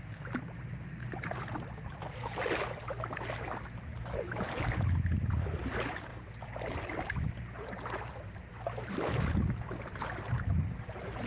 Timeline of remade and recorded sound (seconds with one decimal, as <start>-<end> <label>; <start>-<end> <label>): 0.0-11.3 recorded